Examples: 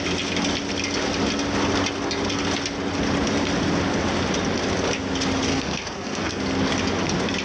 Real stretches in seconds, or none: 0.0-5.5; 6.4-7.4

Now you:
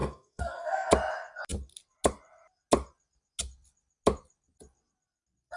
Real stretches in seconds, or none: 0.9-5.6

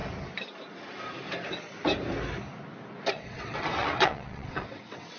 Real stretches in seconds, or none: 0.0-3.1

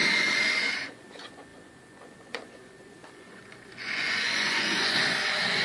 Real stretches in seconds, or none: none

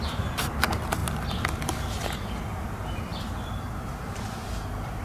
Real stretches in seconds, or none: 0.0-5.0

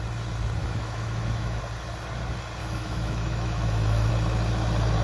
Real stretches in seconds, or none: 0.0-0.6; 1.6-2.6; 4.1-5.0

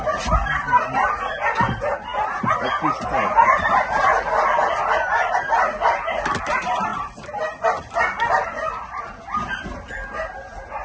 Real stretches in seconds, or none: 0.0-10.8

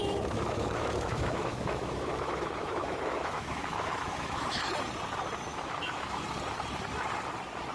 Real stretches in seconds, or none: 4.6-5.5; 6.2-7.7